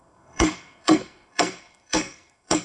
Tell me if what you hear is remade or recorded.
remade